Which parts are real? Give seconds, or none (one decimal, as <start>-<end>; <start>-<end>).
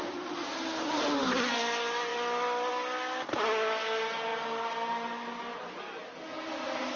0.0-7.0